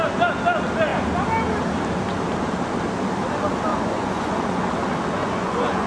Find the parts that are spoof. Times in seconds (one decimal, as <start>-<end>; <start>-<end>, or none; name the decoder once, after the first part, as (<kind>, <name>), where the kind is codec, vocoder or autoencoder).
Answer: 3.7-4.7 (vocoder, Vocos); 5.2-5.9